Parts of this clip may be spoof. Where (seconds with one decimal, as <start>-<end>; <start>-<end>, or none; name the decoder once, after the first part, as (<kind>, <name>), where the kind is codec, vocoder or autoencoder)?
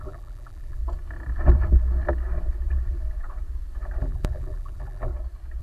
0.0-0.8 (vocoder, BigVGAN v2); 4.0-5.1